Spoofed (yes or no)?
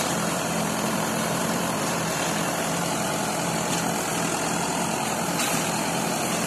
yes